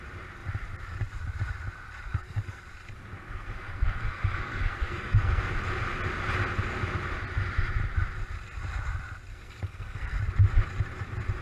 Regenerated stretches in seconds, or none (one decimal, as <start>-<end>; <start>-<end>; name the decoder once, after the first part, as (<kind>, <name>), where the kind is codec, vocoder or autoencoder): 2.1-2.6 (codec, SNAC); 3.1-5.5; 9.3-10.2